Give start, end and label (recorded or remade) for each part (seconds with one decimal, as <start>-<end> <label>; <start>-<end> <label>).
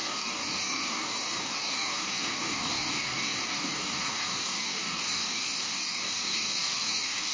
0.0-7.3 remade